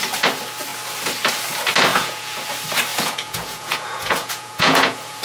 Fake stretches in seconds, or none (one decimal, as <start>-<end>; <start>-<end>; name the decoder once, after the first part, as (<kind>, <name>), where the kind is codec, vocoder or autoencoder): 1.9-2.5 (vocoder, Vocos); 2.9-5.2